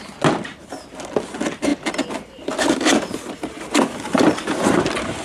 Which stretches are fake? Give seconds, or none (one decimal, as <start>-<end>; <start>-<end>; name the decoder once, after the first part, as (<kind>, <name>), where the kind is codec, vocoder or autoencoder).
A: none